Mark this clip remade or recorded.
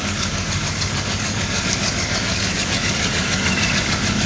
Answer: remade